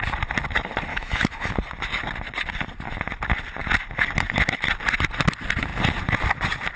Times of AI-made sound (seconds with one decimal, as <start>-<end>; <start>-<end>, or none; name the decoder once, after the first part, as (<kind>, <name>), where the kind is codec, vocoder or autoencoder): 0.9-1.5 (autoencoder, DAC-VAE)